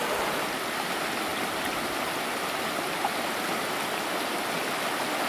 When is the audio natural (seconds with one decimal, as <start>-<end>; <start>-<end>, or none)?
0.0-5.3